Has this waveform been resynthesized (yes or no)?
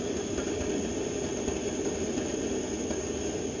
no